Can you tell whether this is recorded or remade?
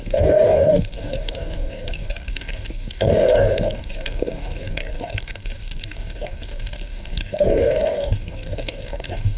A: remade